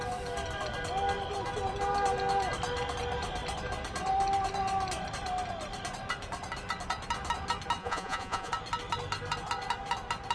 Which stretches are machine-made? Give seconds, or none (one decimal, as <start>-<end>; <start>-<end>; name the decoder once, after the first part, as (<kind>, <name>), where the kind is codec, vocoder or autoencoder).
7.8-8.5 (vocoder, Vocos)